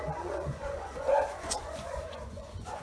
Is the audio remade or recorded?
remade